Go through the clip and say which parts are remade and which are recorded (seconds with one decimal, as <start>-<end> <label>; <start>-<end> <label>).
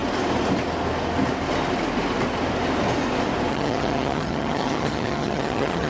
0.0-3.5 recorded; 3.5-5.9 remade